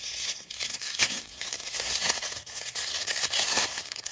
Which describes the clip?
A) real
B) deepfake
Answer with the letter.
B